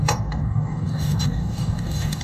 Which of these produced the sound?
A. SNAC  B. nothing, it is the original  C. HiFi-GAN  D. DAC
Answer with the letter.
D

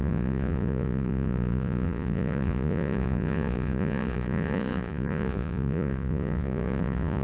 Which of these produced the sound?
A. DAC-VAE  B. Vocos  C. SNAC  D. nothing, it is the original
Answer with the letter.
B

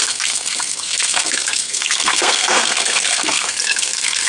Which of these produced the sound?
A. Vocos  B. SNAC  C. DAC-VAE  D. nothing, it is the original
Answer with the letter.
B